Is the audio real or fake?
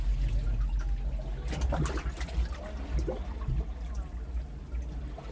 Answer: real